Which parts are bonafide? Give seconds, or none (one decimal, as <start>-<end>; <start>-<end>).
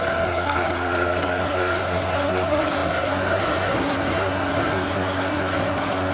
none